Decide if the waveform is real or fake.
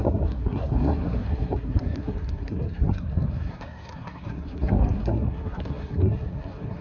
fake